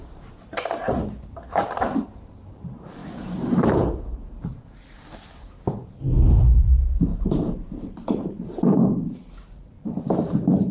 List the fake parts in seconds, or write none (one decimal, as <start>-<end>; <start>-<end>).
0.0-1.0; 1.5-10.7